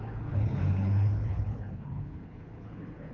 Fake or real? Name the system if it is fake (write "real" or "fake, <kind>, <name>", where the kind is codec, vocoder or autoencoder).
fake, codec, HILCodec